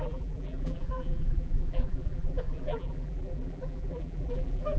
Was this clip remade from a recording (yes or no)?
yes